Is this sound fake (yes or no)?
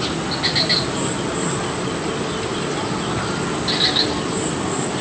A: no